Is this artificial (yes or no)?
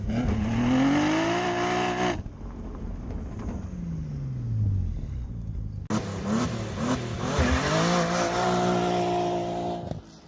no